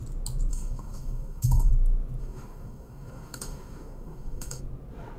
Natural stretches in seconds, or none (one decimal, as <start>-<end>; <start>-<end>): 0.0-0.5; 1.7-2.2; 4.6-5.2